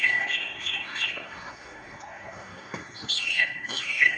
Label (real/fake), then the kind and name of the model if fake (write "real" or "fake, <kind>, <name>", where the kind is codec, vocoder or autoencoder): fake, codec, SNAC